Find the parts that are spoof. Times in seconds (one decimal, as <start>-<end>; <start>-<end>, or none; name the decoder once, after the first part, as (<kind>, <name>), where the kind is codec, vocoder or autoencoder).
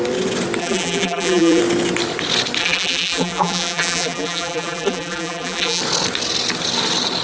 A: 0.6-1.6 (vocoder, BigVGAN v2); 2.6-5.8